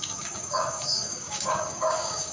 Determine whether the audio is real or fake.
fake